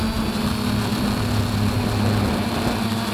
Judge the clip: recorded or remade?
recorded